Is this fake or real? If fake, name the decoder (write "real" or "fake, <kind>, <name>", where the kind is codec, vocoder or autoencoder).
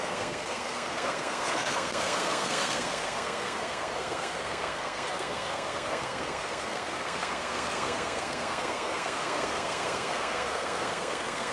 fake, codec, SNAC